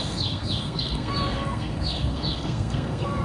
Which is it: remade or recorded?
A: remade